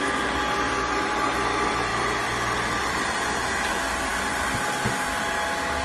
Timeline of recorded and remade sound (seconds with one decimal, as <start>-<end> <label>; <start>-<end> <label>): 0.0-5.8 recorded